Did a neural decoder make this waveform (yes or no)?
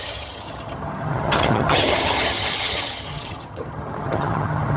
yes